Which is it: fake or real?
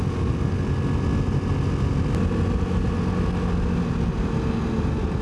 real